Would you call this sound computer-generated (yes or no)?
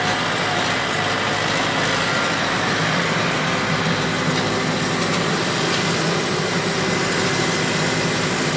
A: no